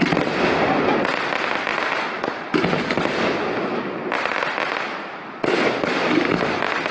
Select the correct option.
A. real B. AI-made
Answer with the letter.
A